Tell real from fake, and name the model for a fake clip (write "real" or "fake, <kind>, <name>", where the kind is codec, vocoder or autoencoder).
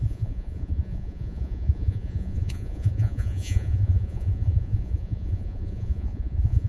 fake, vocoder, Vocos